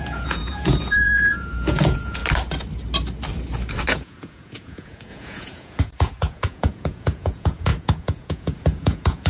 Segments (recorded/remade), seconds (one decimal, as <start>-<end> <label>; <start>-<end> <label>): 0.0-2.2 remade; 2.2-3.9 recorded; 3.9-9.3 remade